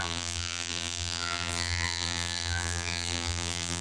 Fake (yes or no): yes